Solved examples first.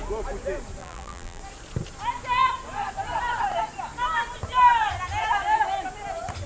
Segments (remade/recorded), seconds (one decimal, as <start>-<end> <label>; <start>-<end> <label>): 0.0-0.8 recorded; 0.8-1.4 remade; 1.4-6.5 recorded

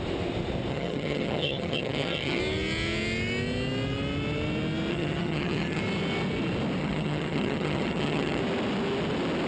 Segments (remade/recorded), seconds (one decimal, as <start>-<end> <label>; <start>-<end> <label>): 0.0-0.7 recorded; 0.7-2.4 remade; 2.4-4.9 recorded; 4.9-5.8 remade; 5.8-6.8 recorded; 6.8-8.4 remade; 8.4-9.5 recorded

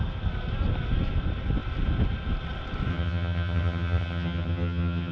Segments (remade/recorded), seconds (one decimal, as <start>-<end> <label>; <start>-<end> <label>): 0.0-2.9 recorded; 2.9-5.1 remade